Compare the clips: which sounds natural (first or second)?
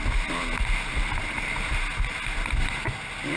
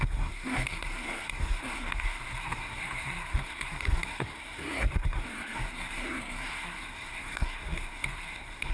first